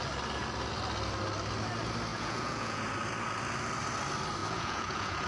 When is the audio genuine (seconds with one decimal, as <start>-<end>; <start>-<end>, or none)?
0.0-2.1; 2.8-4.4